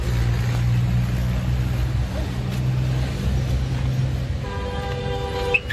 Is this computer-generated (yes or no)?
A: no